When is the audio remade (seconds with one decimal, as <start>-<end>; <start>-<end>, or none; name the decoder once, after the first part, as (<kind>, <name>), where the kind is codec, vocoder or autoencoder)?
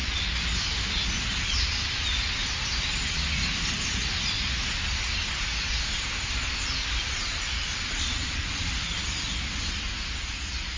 none